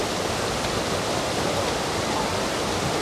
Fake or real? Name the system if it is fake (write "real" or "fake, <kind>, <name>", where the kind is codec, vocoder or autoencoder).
real